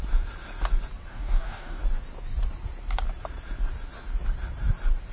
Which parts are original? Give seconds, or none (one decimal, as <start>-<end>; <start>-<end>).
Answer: 0.0-1.1; 1.8-5.1